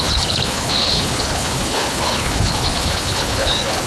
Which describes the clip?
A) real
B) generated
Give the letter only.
B